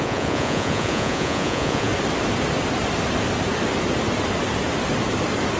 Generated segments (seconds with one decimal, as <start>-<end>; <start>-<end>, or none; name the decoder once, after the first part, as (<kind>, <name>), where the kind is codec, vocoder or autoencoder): 0.0-1.9 (vocoder, Vocos)